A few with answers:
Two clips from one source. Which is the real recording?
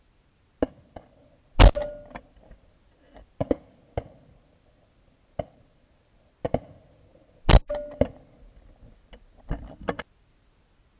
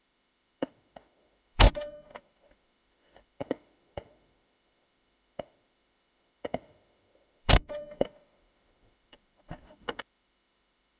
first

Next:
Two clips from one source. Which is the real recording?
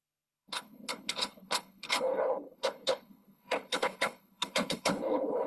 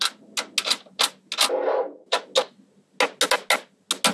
second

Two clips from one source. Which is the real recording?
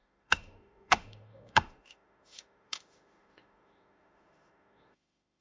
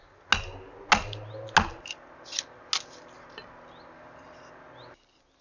second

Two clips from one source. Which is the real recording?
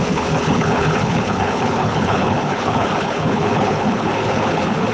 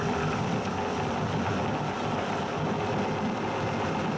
second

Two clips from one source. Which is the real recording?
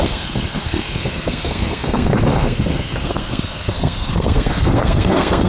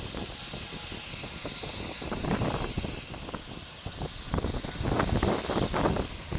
second